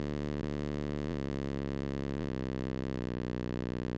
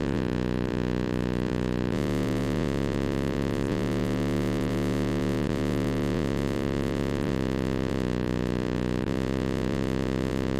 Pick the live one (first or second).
first